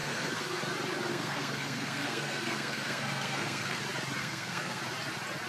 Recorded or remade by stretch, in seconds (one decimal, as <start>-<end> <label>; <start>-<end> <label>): 0.0-0.6 remade; 0.6-1.1 recorded; 1.1-3.8 remade; 3.8-4.2 recorded; 4.2-4.8 remade; 4.8-5.5 recorded